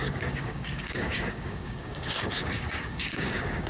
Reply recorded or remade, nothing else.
remade